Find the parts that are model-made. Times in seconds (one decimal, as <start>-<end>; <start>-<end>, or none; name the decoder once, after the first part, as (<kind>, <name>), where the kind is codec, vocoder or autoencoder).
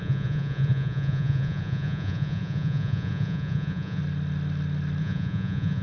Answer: 0.0-4.0 (vocoder, Vocos); 5.0-5.8